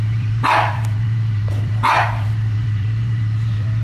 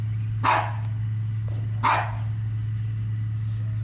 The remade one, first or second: first